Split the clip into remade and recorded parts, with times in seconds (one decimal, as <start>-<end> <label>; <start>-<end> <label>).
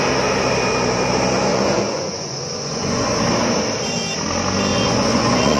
0.0-1.5 recorded; 1.5-3.2 remade; 3.2-4.7 recorded; 4.7-5.6 remade